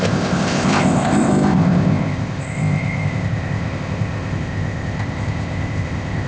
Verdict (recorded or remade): remade